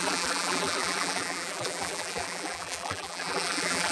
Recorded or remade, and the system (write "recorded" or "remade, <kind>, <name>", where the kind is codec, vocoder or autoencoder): remade, vocoder, BigVGAN v2